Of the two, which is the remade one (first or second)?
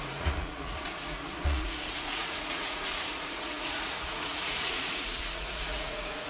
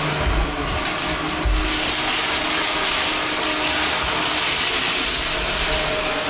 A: first